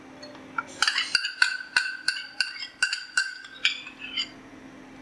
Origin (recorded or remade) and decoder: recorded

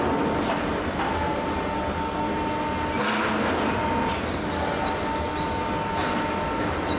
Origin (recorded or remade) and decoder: recorded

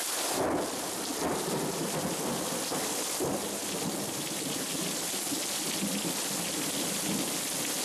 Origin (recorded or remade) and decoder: recorded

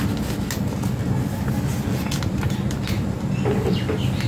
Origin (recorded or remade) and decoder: recorded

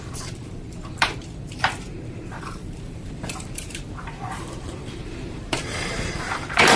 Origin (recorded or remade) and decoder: remade, vocoder, BigVGAN v2